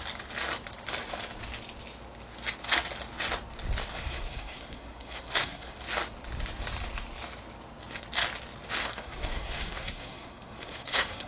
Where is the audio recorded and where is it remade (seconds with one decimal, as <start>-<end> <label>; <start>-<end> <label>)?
0.0-3.9 recorded; 3.9-5.8 remade; 5.8-8.8 recorded; 8.8-11.3 remade